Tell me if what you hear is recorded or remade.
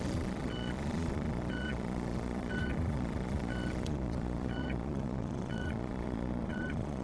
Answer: remade